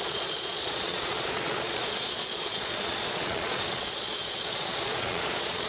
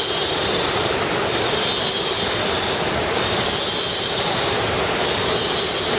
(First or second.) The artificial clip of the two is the first